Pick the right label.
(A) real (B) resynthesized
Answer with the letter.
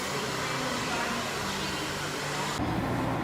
A